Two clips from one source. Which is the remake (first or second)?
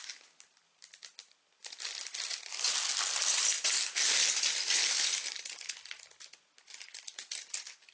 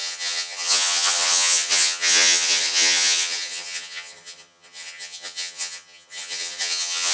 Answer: second